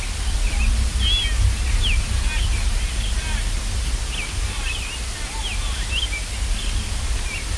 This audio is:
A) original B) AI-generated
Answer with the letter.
A